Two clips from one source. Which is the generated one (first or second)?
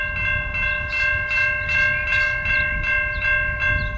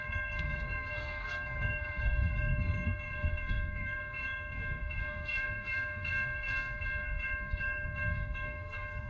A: second